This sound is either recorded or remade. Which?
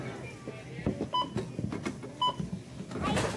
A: recorded